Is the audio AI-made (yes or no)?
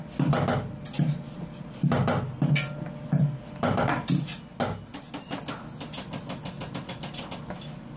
no